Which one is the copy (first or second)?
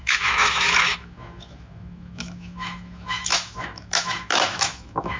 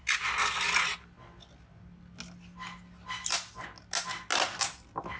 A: first